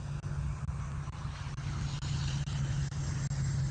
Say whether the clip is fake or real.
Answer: real